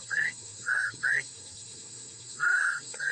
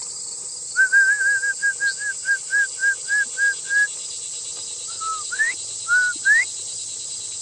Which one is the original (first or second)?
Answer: second